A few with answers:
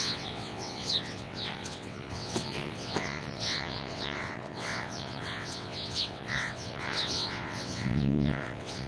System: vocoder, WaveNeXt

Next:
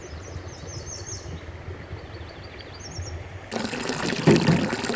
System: none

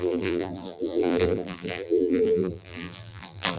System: vocoder, BigVGAN v2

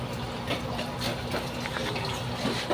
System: none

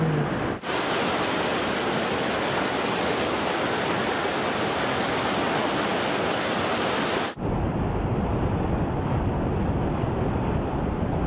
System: none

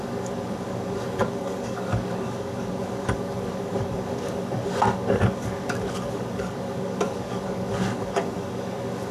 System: codec, DAC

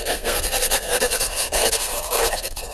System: codec, SNAC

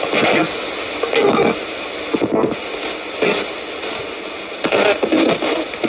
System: none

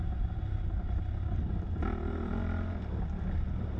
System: none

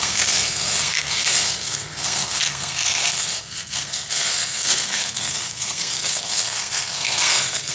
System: codec, SNAC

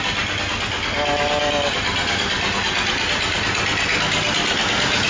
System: none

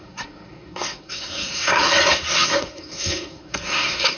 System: codec, SNAC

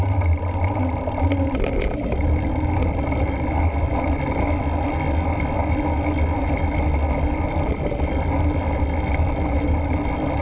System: none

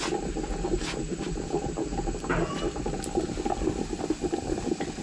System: none